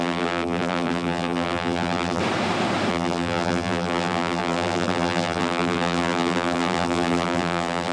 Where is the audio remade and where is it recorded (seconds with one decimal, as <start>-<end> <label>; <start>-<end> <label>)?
0.0-2.2 remade; 2.2-2.9 recorded; 2.9-7.9 remade